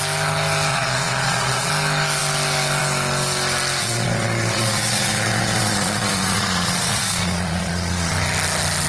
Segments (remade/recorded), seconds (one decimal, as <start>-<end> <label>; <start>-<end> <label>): 0.0-0.7 recorded; 0.7-1.7 remade; 1.7-3.8 recorded; 3.8-8.1 remade; 8.1-8.9 recorded